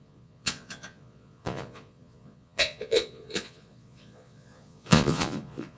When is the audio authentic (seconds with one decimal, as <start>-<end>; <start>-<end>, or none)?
none